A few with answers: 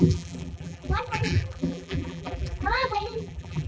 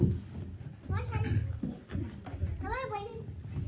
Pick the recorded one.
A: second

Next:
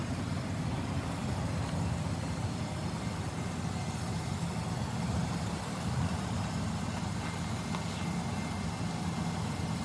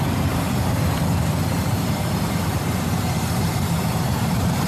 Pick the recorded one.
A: first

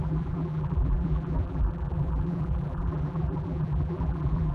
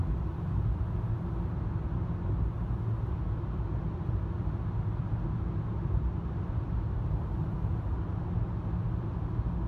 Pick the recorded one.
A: second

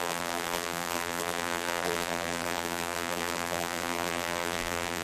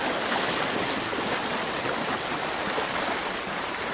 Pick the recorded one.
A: second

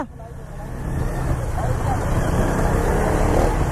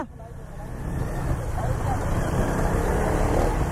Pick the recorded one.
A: first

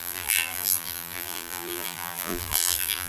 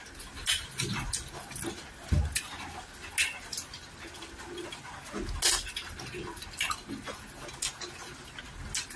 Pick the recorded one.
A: second